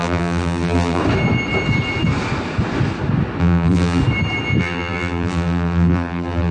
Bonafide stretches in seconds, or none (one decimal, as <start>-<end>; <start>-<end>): 1.0-3.4; 4.0-4.6